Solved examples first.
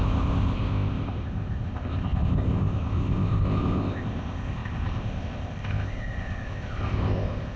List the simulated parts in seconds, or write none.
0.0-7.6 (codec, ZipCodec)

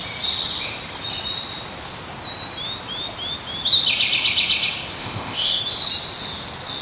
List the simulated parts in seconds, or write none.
5.0-5.6 (codec, ZipCodec)

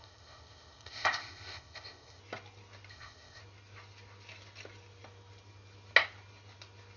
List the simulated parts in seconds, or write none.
0.0-2.2 (codec, ZipCodec); 2.9-3.4

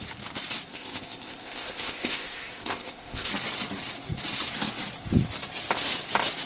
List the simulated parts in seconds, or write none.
0.7-3.3 (codec, ZipCodec)

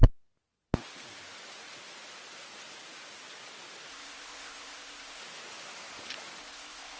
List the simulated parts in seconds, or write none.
3.9-5.2 (codec, ZipCodec); 6.4-7.0